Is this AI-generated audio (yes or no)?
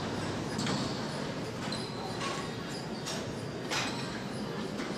no